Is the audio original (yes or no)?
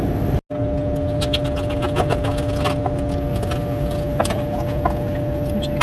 yes